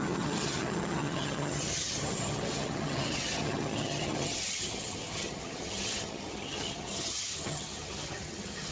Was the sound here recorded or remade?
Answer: remade